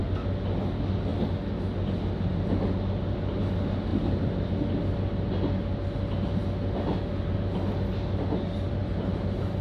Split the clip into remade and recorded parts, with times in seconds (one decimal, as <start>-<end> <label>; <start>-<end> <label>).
0.0-3.9 recorded; 3.9-4.5 remade; 4.5-9.6 recorded